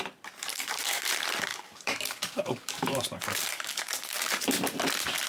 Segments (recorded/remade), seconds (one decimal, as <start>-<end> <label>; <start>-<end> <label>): 0.0-0.5 recorded; 0.5-1.1 remade; 1.1-1.5 recorded; 1.5-4.3 remade; 4.3-5.3 recorded